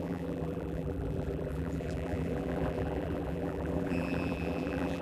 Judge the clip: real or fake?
fake